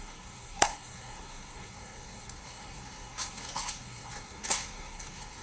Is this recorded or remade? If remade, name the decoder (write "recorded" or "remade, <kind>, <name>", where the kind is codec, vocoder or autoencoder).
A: remade, codec, SNAC